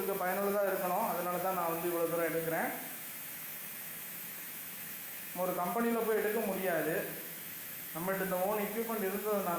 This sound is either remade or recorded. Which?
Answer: remade